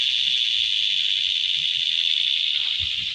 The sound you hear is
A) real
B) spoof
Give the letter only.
A